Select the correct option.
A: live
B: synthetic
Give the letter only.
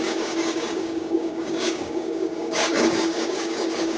B